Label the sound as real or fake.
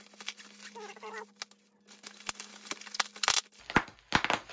real